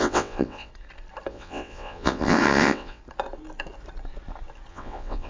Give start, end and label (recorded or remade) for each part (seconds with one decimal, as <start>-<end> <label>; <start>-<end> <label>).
0.0-0.7 remade; 0.7-1.3 recorded; 1.3-3.0 remade; 3.0-4.7 recorded; 4.7-5.3 remade